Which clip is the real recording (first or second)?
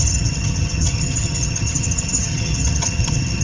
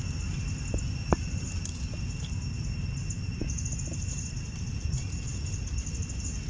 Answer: second